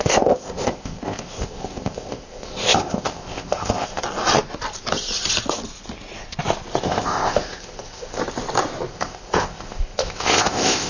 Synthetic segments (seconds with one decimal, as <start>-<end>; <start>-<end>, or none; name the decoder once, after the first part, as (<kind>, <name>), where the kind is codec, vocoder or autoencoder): 0.0-4.0 (codec, ZipCodec); 6.8-8.2; 8.9-10.9